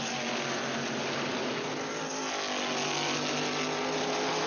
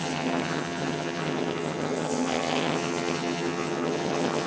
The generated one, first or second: second